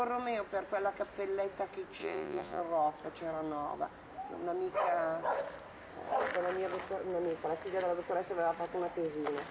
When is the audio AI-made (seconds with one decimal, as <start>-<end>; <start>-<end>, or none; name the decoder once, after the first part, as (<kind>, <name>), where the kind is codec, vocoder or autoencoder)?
2.0-2.6 (vocoder, Vocos)